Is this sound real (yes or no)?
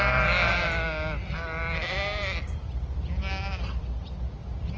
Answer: yes